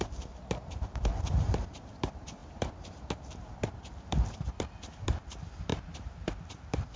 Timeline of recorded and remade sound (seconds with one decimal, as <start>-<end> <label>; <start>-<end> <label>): 0.0-7.0 remade